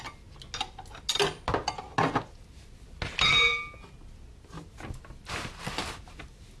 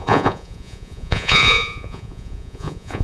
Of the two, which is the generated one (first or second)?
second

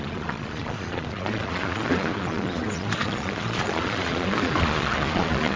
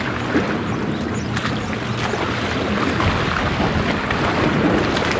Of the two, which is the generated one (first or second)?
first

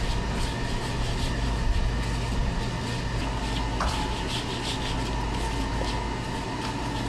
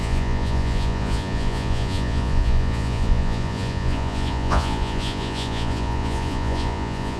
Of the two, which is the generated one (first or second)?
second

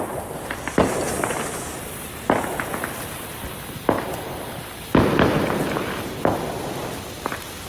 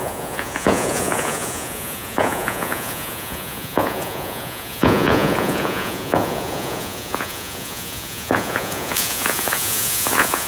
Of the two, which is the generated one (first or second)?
second